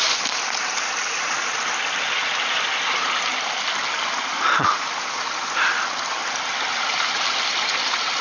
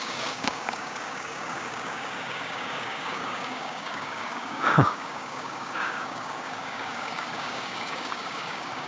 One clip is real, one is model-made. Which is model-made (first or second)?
second